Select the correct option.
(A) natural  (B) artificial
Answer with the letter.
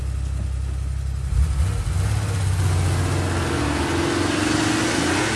A